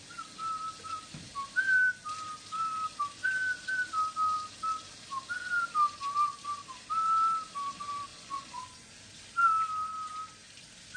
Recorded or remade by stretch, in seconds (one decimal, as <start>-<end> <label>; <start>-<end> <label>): 0.0-8.1 recorded; 8.1-8.9 remade; 8.9-11.0 recorded